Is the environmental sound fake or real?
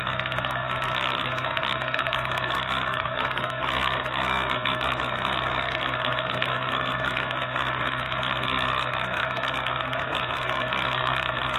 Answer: fake